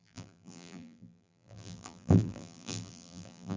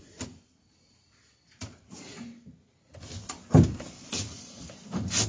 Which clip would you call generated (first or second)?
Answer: first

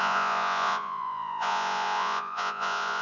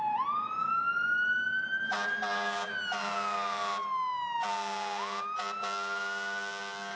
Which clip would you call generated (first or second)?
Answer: first